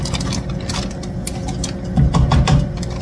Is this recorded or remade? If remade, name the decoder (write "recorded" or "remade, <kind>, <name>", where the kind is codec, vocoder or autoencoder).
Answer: recorded